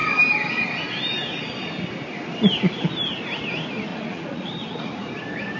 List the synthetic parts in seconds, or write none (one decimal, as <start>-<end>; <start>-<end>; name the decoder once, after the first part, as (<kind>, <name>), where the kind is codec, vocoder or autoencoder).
3.9-5.1 (vocoder, Vocos)